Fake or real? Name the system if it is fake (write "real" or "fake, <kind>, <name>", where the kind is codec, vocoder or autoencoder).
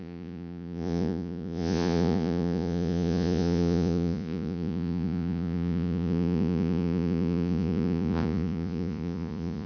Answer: fake, vocoder, Vocos